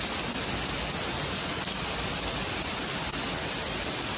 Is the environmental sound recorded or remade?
recorded